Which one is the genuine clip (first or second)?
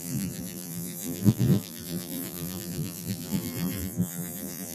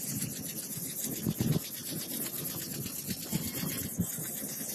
second